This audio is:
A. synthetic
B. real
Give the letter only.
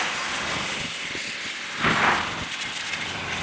B